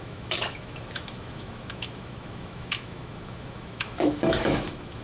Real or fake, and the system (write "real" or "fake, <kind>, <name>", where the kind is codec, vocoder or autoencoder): fake, autoencoder, DAC-VAE